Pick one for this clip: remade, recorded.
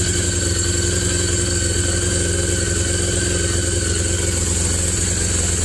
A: recorded